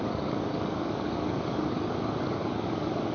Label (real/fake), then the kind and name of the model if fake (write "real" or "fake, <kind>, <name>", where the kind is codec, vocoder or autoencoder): fake, codec, DAC